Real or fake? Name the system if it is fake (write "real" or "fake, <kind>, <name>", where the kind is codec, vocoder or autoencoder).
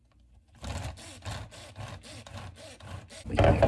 real